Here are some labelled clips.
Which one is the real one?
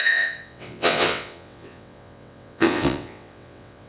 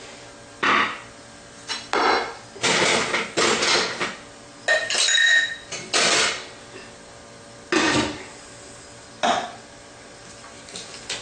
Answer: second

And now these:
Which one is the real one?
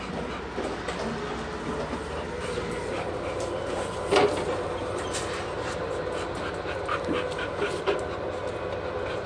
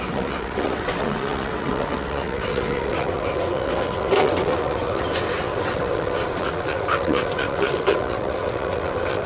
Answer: first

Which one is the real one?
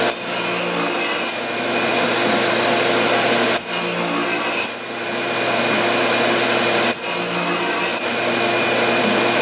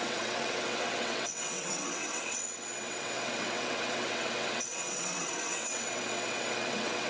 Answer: first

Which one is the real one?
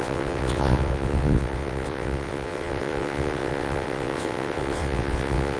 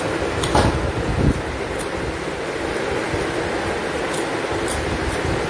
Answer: second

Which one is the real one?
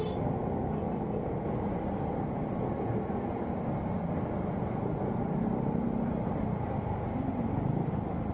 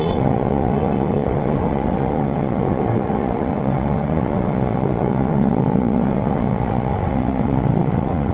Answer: first